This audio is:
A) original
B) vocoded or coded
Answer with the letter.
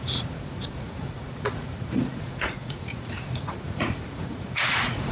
B